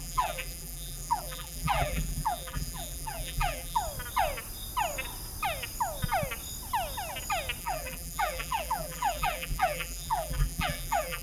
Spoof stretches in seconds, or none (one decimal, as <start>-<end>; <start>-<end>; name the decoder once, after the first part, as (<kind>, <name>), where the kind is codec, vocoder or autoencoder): 0.0-3.8 (vocoder, BigVGAN v2); 7.6-11.2